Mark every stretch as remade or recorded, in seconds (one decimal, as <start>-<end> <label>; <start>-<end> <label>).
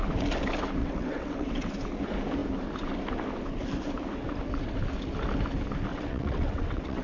0.0-0.8 recorded; 0.8-1.7 remade; 1.7-5.9 recorded; 5.9-7.0 remade